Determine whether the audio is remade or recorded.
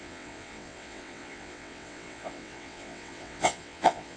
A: remade